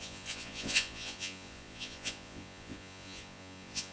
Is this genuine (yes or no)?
no